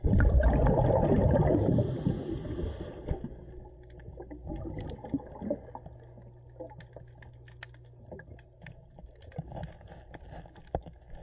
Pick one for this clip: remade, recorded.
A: recorded